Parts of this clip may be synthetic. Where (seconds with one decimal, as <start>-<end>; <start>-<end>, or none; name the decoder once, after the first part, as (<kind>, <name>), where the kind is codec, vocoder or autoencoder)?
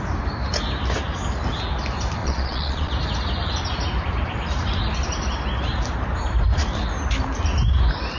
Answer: 2.2-2.9 (vocoder, Vocos)